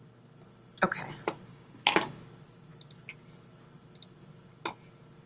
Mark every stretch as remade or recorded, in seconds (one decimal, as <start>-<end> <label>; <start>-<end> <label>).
0.0-1.5 recorded; 1.5-2.2 remade; 2.2-5.3 recorded